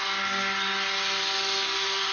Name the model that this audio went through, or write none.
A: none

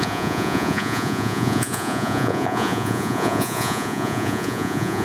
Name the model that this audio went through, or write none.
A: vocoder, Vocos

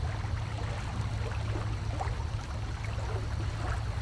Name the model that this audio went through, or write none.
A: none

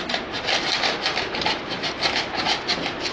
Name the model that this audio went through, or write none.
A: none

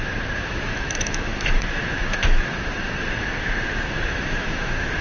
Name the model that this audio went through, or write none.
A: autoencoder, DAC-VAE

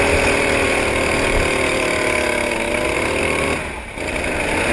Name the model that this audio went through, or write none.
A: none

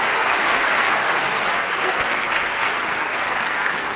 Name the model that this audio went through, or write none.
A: codec, SNAC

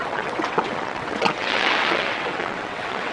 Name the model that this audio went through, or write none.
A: vocoder, WaveNeXt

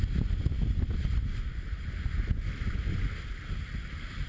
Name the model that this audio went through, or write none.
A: none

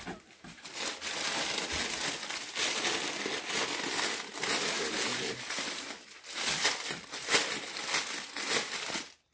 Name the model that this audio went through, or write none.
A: none